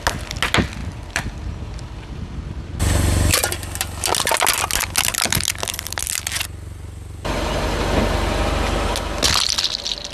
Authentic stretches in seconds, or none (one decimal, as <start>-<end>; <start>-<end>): 0.0-0.8; 2.7-10.1